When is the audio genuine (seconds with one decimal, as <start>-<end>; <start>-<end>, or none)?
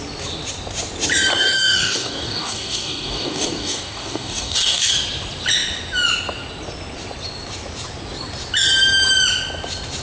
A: 0.0-1.3; 4.9-10.0